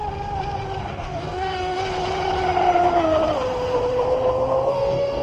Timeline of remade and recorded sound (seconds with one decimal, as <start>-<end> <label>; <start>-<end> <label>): 0.0-0.8 recorded; 0.8-1.8 remade; 1.8-4.7 recorded; 4.7-5.2 remade